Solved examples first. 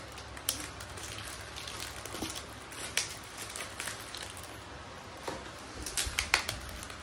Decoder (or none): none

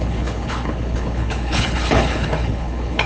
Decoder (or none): codec, HILCodec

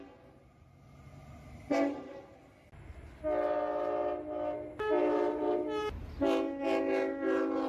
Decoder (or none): none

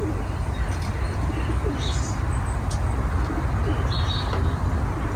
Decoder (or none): none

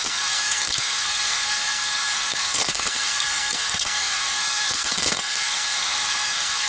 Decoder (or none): codec, SNAC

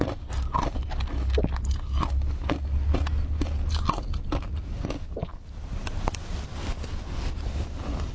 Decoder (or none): none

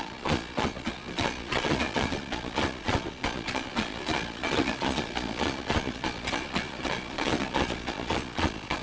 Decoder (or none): vocoder, Vocos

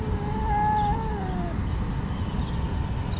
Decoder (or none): none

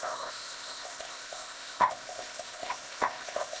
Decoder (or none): codec, ZipCodec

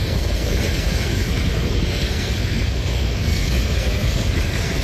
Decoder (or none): codec, SNAC